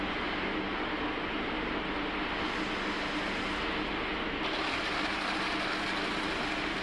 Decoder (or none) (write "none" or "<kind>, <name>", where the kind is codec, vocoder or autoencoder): none